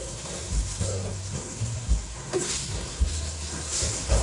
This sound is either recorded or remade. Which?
remade